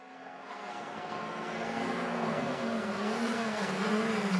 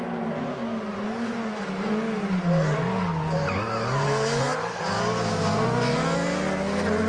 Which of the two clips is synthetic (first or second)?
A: first